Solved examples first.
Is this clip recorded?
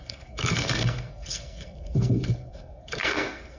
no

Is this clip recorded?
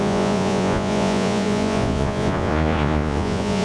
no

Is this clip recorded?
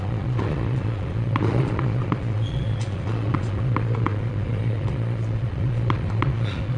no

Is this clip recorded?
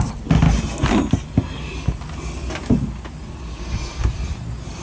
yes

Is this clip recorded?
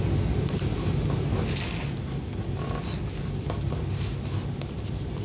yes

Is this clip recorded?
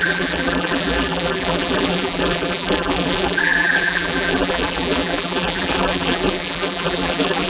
no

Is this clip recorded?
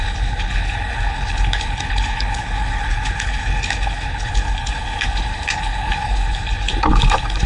no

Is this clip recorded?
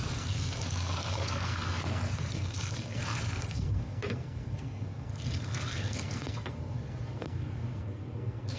no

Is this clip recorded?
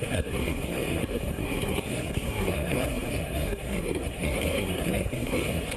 no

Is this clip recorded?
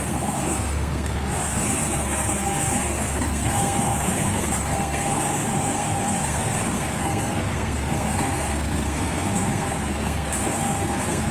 no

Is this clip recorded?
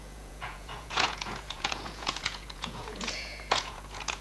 no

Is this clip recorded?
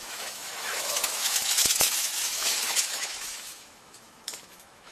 no